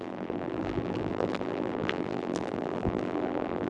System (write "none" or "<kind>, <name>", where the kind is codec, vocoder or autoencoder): vocoder, BigVGAN v2